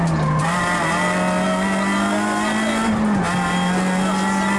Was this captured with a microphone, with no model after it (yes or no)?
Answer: yes